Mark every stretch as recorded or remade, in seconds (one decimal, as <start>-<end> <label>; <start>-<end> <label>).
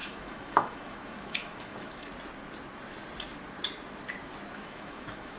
0.0-2.1 remade; 2.1-4.5 recorded; 4.5-5.4 remade